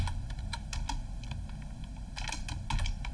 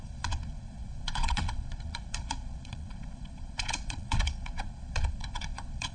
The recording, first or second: first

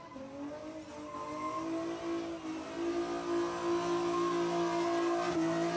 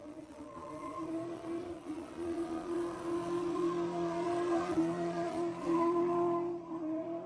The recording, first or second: first